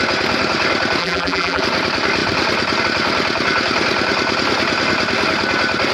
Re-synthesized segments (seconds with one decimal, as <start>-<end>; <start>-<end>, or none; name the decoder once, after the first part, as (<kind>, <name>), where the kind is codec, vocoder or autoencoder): 1.0-1.6 (vocoder, BigVGAN v2)